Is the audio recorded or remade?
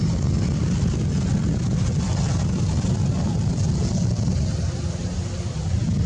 recorded